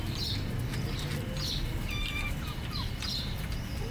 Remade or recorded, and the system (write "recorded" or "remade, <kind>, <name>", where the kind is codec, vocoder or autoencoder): recorded